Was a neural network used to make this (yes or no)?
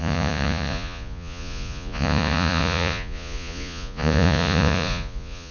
yes